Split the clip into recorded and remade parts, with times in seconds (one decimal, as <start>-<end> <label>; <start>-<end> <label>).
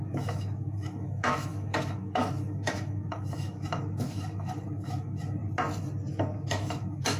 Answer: 0.0-5.4 remade; 5.4-6.1 recorded; 6.1-7.2 remade